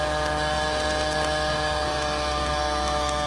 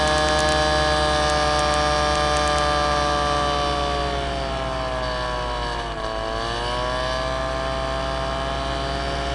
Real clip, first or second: second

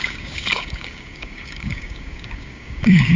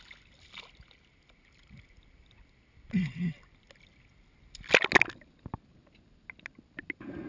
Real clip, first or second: second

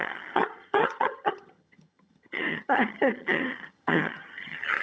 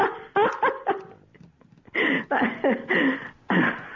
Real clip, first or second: second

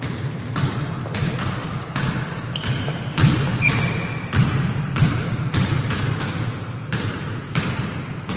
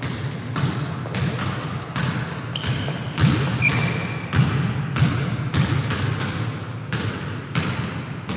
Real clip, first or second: second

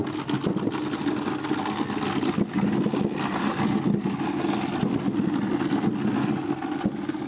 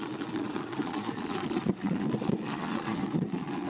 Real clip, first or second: first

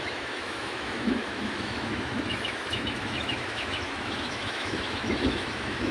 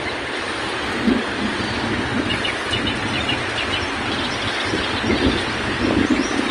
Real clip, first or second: second